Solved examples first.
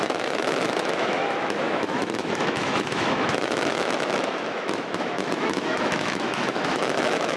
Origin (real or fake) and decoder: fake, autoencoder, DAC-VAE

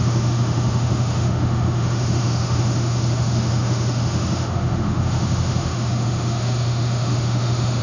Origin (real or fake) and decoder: fake, autoencoder, DAC-VAE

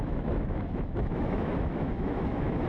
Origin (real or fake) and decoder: fake, autoencoder, DAC-VAE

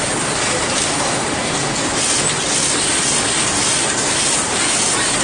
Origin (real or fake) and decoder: real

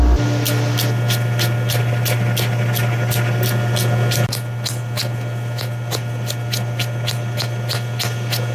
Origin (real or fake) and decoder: real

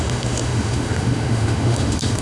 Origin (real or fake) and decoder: fake, autoencoder, DAC-VAE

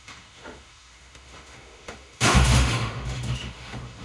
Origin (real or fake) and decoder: fake, autoencoder, DAC-VAE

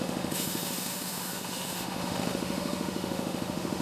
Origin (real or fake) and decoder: fake, autoencoder, DAC-VAE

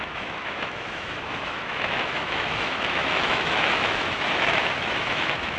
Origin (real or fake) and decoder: fake, autoencoder, DAC-VAE